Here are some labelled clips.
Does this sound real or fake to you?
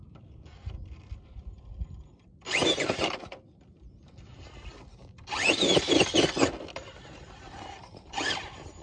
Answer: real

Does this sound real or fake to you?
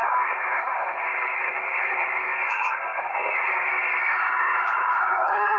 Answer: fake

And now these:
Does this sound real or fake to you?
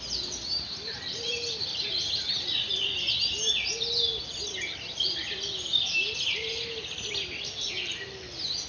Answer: real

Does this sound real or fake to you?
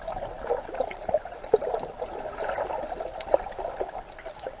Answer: fake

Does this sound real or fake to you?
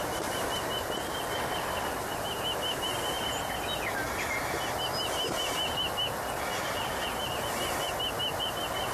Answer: real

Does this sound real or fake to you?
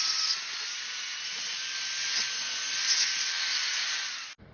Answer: real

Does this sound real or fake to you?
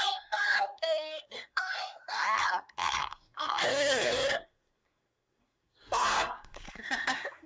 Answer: fake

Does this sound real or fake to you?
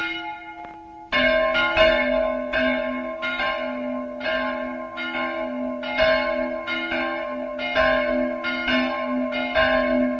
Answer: real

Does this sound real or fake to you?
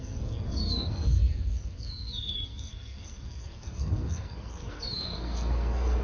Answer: fake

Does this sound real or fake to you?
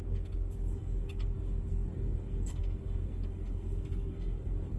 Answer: fake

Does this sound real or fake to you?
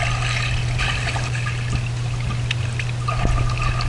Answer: real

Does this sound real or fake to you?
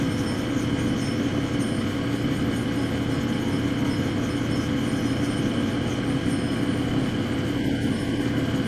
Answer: real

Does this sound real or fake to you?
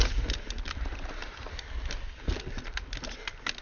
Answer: real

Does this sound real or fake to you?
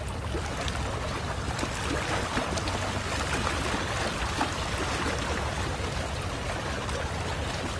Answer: real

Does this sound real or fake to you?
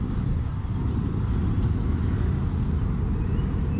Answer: real